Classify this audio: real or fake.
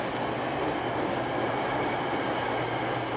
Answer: real